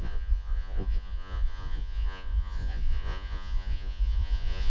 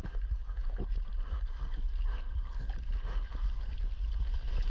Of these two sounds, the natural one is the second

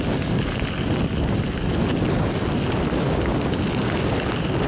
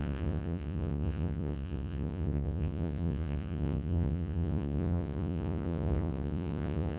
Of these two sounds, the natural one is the first